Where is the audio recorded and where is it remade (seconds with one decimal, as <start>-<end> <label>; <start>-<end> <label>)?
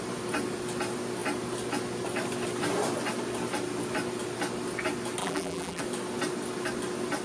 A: 0.0-5.2 recorded; 5.2-5.8 remade; 5.8-7.2 recorded